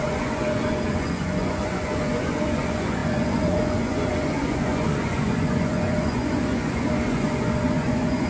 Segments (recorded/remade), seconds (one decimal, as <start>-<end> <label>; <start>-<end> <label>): 0.0-8.3 remade